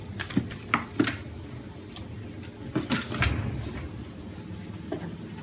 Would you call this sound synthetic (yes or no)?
no